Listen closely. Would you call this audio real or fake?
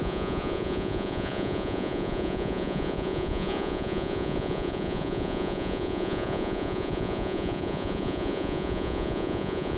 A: fake